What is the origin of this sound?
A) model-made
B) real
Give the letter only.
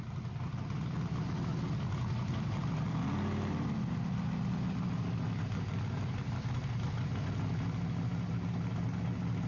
B